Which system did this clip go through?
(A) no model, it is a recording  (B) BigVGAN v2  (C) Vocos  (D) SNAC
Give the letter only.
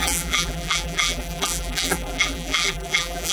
B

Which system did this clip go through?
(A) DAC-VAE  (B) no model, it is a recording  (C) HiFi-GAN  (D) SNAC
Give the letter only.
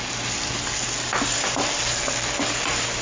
B